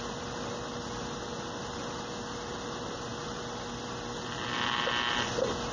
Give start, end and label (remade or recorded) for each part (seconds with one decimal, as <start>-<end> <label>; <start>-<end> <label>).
0.0-5.7 recorded